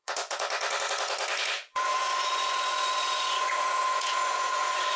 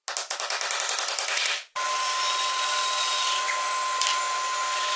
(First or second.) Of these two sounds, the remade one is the first